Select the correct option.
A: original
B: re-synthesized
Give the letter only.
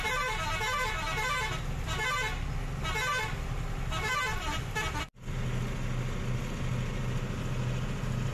A